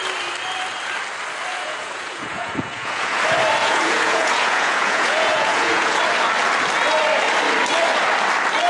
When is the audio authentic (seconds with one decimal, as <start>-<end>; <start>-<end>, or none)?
0.0-1.5; 3.2-3.6; 6.0-8.7